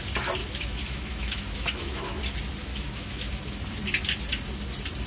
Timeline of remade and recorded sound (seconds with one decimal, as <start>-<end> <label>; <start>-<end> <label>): 0.0-0.4 recorded; 0.4-2.2 remade; 2.2-2.7 recorded; 2.7-3.3 remade; 3.3-5.1 recorded